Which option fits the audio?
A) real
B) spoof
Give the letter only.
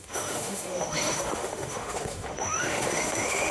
B